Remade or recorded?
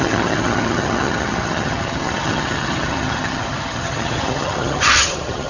remade